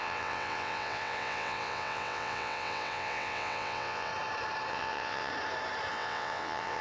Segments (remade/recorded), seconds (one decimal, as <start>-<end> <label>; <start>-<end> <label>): 0.0-4.1 remade; 4.1-4.7 recorded; 4.7-5.3 remade; 5.3-5.9 recorded; 5.9-6.8 remade